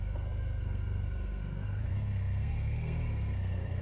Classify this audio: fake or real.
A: fake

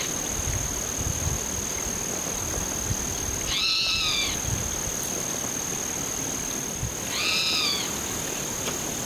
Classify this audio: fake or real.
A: real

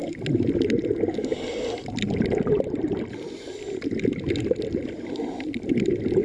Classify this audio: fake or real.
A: real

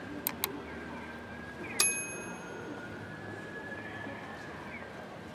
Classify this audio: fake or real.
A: real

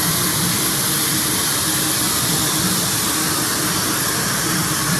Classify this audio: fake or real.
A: real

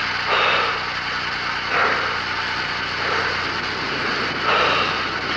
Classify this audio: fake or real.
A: real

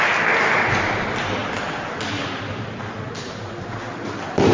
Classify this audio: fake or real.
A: real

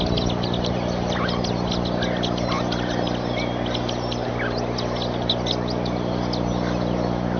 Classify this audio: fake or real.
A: real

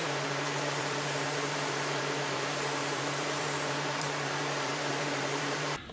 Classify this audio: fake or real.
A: fake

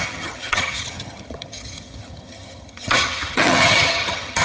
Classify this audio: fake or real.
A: fake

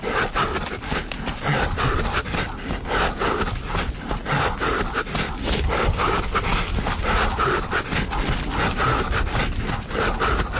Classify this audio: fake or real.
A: real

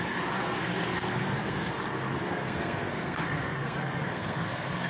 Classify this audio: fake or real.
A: fake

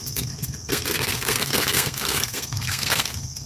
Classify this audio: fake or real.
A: fake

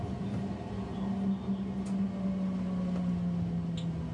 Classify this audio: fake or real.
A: real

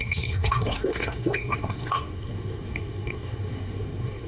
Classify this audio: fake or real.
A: fake